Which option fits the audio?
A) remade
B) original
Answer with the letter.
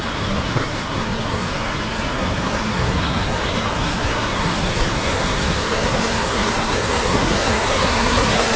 A